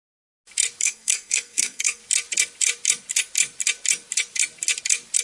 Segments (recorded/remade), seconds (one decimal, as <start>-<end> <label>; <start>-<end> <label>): 0.0-0.8 recorded; 0.8-2.0 remade; 2.0-5.2 recorded